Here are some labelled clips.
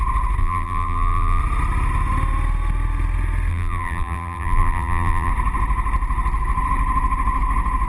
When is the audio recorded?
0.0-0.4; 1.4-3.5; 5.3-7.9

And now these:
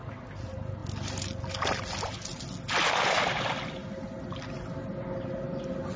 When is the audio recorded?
0.0-6.0

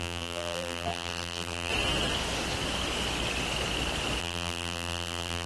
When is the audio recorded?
1.7-4.2

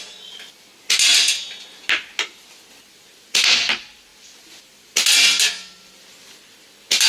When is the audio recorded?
0.0-7.1